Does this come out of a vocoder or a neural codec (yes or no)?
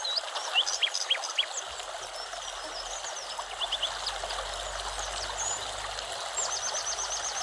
no